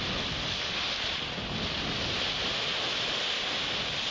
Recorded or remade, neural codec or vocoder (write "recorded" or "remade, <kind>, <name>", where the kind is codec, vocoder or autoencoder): recorded